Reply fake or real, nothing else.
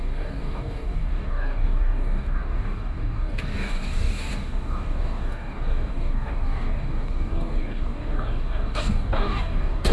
fake